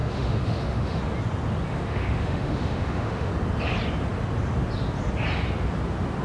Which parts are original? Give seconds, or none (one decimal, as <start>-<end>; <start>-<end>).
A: 1.0-1.7; 3.3-6.2